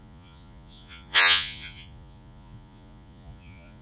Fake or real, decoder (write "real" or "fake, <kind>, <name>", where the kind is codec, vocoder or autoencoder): fake, vocoder, Vocos